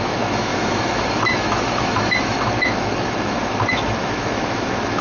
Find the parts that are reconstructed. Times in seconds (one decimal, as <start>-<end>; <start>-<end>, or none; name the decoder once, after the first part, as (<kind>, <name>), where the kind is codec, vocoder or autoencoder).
0.0-5.0 (autoencoder, DAC-VAE)